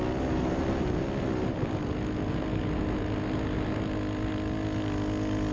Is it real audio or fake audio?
real